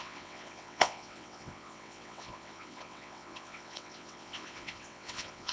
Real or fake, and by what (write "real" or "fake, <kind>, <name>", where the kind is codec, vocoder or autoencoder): fake, vocoder, WaveNeXt